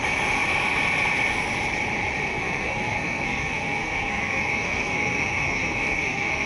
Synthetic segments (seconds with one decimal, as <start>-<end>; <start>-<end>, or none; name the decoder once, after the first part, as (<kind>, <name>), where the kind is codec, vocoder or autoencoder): 2.3-6.5 (codec, SNAC)